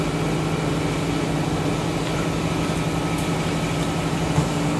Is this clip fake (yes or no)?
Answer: no